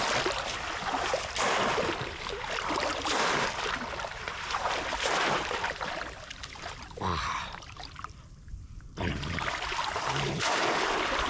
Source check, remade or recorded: remade